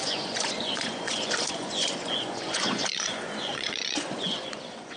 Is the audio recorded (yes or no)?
no